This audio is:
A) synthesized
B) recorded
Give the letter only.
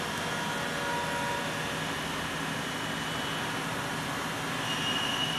B